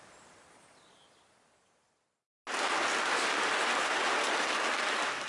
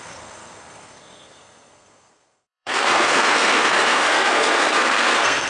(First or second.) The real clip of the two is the first